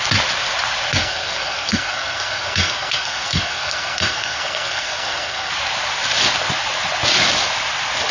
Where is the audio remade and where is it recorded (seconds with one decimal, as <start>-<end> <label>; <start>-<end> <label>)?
0.0-1.0 recorded; 1.0-5.5 remade; 5.5-8.1 recorded